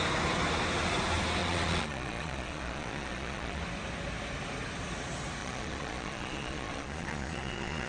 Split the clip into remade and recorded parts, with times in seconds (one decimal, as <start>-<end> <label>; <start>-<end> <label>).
0.0-1.4 recorded; 1.4-3.6 remade; 3.6-5.4 recorded; 5.4-7.9 remade